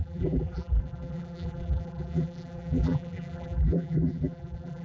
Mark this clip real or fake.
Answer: fake